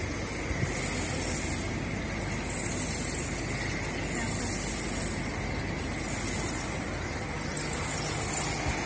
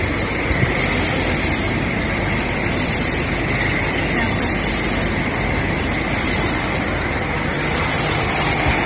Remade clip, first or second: second